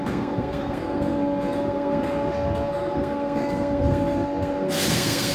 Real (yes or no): no